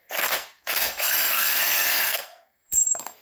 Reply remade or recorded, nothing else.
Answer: remade